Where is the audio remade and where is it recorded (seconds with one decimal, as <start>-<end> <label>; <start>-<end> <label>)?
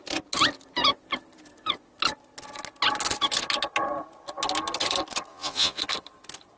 0.0-5.3 recorded; 5.3-5.8 remade; 5.8-6.6 recorded